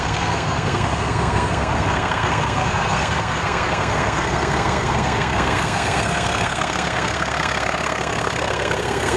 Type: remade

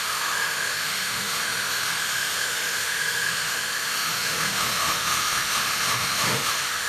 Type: remade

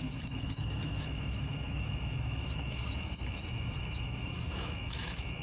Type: remade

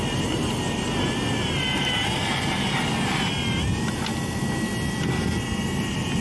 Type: recorded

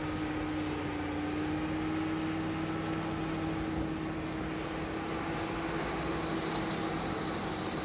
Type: recorded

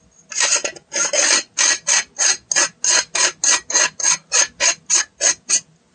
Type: recorded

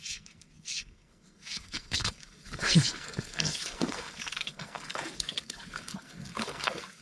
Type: remade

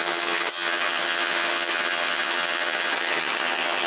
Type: remade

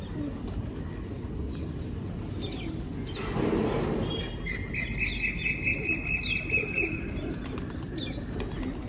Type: recorded